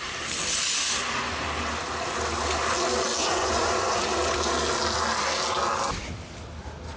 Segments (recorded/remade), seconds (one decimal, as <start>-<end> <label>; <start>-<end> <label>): 0.0-3.2 recorded; 3.2-4.0 remade; 4.0-7.0 recorded